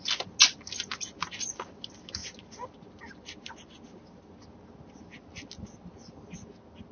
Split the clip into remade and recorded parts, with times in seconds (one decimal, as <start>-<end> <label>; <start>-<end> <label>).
0.0-6.9 recorded